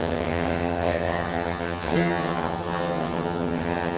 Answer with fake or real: fake